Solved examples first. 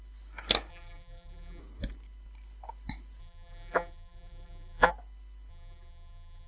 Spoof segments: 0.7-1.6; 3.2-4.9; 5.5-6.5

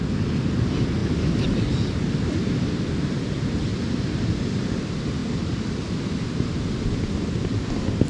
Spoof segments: 3.7-4.2; 5.2-5.8

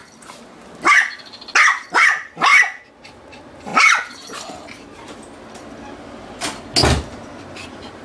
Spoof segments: 1.7-2.5; 3.0-3.7; 7.1-8.0